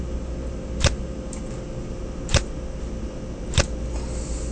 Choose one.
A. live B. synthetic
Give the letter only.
A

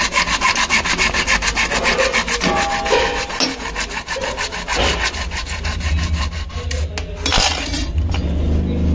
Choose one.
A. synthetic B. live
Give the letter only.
B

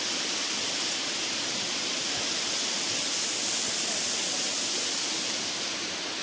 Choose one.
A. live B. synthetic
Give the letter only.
A